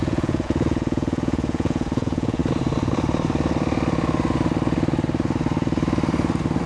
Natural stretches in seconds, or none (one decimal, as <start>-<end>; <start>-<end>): 2.4-6.7